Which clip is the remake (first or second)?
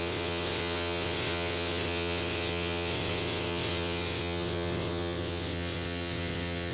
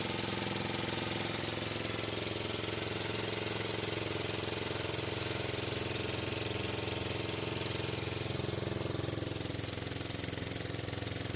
first